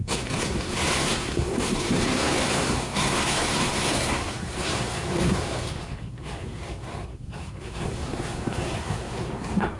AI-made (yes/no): yes